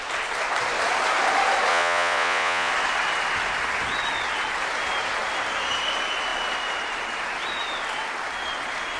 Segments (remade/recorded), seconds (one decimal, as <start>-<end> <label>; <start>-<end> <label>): 0.0-1.7 recorded; 1.7-2.7 remade; 2.7-9.0 recorded

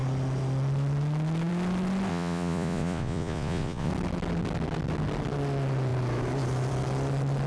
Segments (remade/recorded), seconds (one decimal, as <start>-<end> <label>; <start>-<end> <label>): 0.0-2.1 recorded; 2.1-3.9 remade; 3.9-7.5 recorded